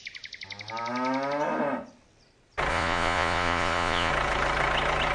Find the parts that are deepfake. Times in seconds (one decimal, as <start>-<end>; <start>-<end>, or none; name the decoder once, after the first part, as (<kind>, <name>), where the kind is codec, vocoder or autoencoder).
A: 2.7-4.1 (vocoder, Vocos)